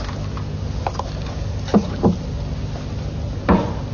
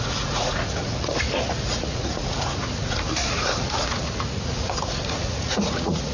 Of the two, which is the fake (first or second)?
second